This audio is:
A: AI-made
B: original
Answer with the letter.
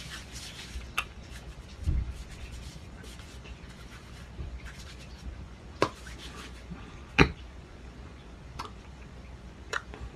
A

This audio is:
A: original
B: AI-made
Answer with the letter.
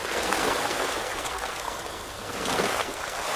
B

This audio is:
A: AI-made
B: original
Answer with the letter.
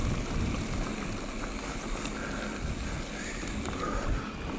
B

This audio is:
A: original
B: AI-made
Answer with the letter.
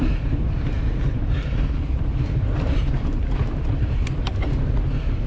B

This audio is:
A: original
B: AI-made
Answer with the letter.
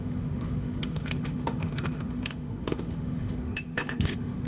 B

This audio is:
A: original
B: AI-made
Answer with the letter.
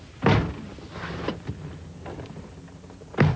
A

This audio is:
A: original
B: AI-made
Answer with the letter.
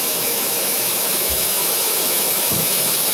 B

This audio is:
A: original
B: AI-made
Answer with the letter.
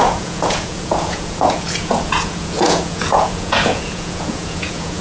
B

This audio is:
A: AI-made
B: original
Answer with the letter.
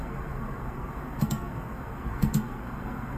A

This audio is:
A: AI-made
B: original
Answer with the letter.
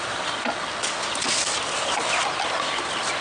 B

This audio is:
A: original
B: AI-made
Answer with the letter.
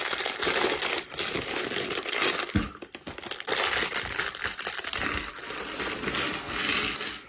A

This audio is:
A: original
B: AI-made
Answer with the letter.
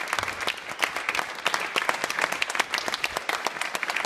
A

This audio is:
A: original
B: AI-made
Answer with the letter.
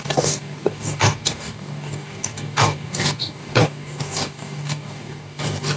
B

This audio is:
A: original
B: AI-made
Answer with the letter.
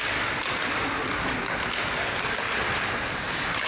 A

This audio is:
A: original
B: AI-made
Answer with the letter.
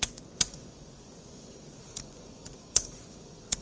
B